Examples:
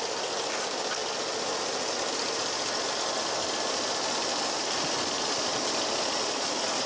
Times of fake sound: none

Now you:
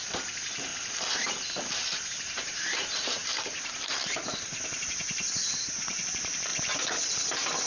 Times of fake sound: 0.0-0.7 (vocoder, BigVGAN v2); 2.1-6.5

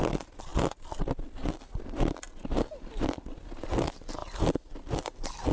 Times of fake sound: none

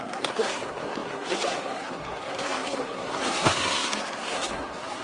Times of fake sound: 0.0-5.0 (codec, SNAC)